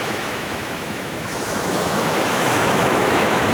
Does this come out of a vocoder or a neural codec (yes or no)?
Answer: yes